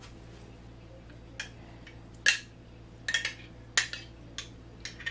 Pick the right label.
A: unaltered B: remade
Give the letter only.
A